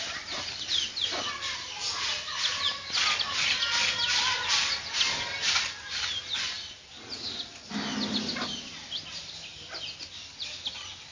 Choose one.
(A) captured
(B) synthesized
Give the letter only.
A